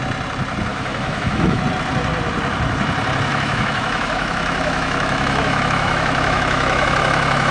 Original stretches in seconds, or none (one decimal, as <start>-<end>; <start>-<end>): 0.0-0.7; 1.6-3.3